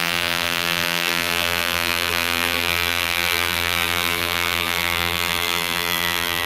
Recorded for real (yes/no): no